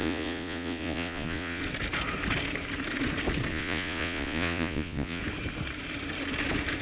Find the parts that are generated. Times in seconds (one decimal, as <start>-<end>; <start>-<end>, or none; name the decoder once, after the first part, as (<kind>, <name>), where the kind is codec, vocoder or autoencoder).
0.0-1.6 (vocoder, Vocos); 3.5-5.2